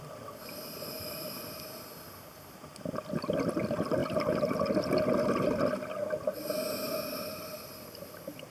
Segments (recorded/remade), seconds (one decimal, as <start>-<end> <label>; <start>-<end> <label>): 0.0-4.0 recorded; 4.0-4.9 remade; 4.9-8.5 recorded